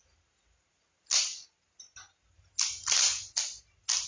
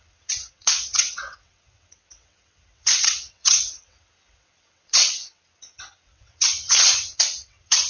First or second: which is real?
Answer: first